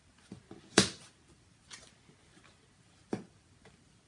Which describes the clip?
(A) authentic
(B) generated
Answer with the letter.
B